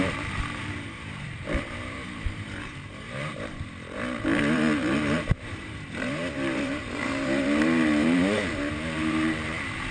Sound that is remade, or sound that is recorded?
remade